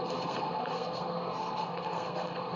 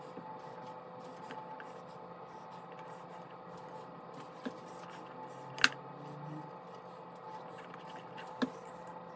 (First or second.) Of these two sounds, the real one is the second